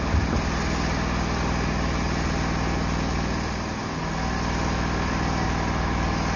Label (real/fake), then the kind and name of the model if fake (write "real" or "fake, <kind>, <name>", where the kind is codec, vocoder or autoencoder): real